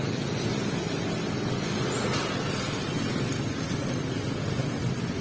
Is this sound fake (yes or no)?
no